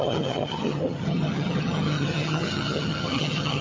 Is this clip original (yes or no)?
no